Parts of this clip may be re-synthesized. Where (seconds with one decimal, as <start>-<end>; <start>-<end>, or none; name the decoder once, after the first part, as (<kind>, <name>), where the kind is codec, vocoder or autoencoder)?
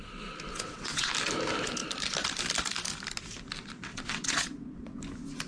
0.5-1.1 (vocoder, WaveNeXt); 3.9-5.0